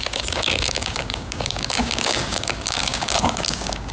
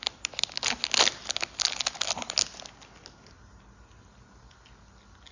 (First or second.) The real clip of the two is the second